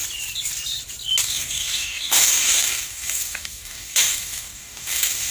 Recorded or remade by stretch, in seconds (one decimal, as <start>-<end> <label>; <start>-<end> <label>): 0.0-1.2 recorded; 1.2-5.3 remade